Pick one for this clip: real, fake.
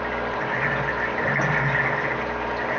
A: real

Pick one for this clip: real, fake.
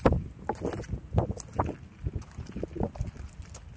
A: real